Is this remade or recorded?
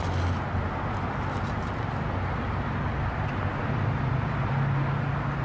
recorded